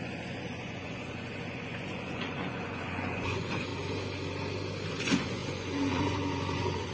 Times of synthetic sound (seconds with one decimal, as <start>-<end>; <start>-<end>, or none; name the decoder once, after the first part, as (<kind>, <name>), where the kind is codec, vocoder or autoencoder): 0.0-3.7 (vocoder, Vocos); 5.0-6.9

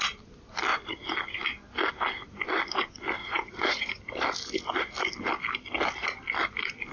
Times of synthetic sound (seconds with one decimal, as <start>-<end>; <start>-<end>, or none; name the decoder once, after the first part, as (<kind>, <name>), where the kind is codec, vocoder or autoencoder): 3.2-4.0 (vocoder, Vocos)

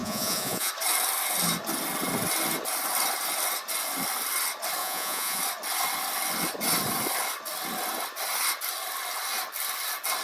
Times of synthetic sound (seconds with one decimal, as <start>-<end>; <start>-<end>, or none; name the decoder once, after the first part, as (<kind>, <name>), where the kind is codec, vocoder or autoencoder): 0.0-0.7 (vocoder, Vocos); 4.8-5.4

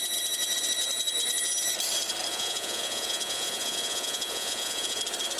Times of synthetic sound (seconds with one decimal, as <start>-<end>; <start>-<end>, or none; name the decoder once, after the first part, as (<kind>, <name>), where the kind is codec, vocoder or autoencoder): 2.3-5.0 (vocoder, Vocos)

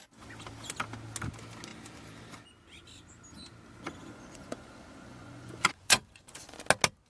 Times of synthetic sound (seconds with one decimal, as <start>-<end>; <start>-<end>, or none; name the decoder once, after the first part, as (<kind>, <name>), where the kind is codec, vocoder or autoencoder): 4.0-6.6 (vocoder, Vocos)

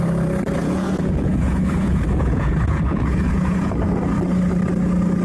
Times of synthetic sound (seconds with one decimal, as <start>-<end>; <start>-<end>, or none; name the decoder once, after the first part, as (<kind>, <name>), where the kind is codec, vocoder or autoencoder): 0.6-3.7 (vocoder, Vocos)